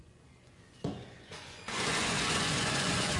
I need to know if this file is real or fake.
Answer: fake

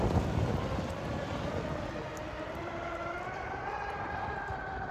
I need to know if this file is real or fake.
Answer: real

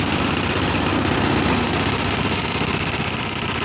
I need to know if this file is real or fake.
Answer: real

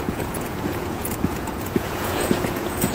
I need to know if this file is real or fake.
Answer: fake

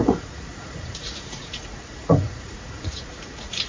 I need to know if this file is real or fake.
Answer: fake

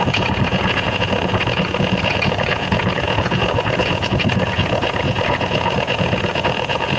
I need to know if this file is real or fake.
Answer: fake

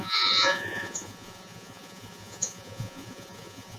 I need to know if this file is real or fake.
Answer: fake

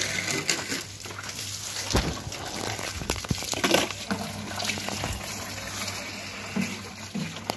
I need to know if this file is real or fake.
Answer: real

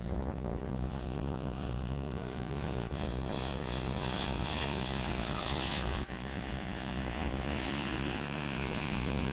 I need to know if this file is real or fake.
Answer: fake